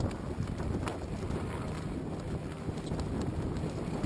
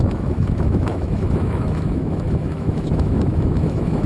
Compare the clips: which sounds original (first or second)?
first